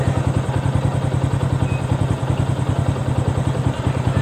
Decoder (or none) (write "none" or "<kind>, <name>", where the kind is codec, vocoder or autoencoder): none